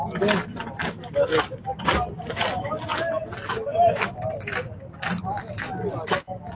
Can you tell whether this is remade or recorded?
recorded